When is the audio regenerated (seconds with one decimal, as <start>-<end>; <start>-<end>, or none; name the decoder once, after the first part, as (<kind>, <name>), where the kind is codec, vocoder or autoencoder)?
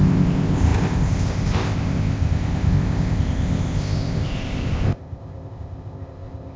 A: 0.0-6.6 (codec, ZipCodec)